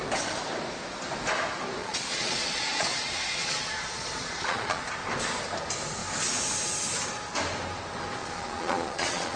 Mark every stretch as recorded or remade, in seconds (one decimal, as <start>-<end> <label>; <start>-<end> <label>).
0.0-1.8 recorded; 1.8-4.8 remade; 4.8-8.2 recorded; 8.2-9.4 remade